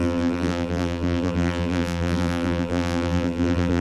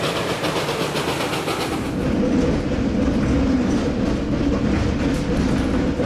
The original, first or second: second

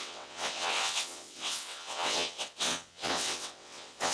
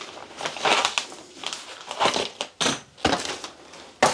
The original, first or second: second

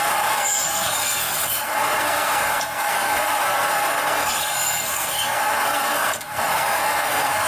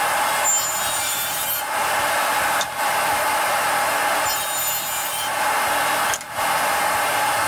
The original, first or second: second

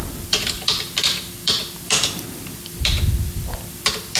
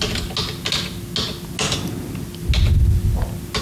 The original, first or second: second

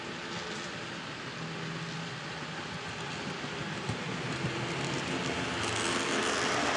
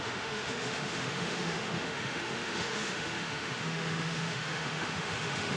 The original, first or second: first